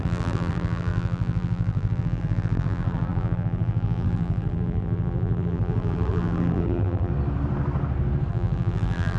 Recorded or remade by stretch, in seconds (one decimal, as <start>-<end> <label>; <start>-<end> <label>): 0.0-7.1 remade; 7.1-8.3 recorded; 8.3-9.2 remade